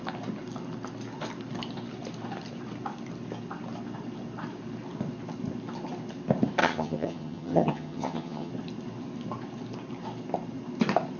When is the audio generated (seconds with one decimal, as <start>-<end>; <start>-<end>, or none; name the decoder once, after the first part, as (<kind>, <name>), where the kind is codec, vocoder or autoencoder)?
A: 6.6-8.5 (vocoder, HiFi-GAN)